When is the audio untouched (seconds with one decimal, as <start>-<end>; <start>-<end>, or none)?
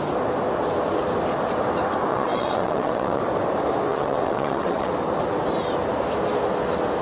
0.0-2.1; 3.2-3.9; 4.9-7.0